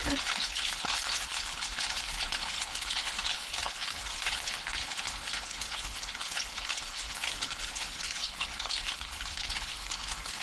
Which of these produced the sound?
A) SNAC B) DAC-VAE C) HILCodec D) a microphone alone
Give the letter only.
C